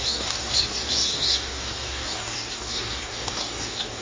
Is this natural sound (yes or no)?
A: no